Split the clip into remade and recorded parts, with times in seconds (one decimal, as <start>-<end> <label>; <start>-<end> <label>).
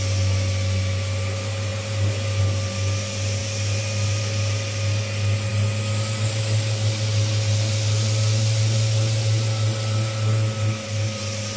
0.0-11.6 recorded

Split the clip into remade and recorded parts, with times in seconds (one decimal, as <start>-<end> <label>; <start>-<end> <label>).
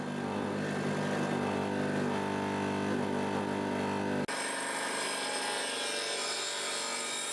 0.0-7.3 recorded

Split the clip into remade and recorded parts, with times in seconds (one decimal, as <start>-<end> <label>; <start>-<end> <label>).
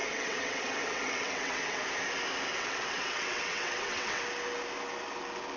0.0-1.8 remade; 1.8-2.5 recorded; 2.5-4.2 remade; 4.2-5.6 recorded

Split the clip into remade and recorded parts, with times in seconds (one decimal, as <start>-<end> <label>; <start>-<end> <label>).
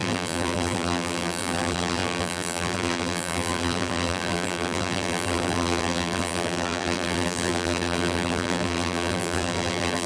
0.0-10.1 remade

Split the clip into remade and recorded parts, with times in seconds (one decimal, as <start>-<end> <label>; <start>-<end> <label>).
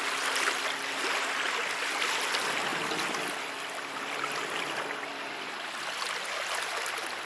0.0-7.3 recorded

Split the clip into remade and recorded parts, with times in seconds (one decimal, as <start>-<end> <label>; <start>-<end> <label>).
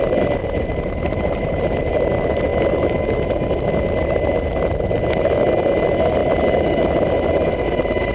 0.0-0.4 recorded; 0.4-1.9 remade; 1.9-8.1 recorded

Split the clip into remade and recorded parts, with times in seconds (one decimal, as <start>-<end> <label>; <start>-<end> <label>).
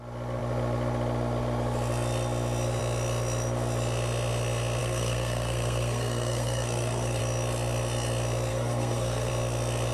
0.0-4.8 recorded; 4.8-7.2 remade; 7.2-8.5 recorded; 8.5-9.3 remade; 9.3-9.9 recorded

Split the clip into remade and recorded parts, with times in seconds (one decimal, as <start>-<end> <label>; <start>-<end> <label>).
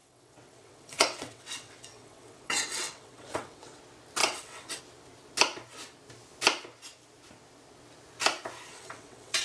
0.0-3.8 remade; 3.8-4.2 recorded; 4.2-4.8 remade; 4.8-8.7 recorded; 8.7-9.4 remade